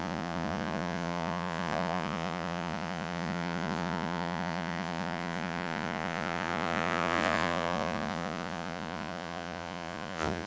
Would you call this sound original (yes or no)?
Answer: no